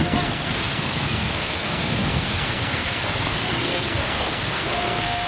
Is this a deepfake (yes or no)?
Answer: yes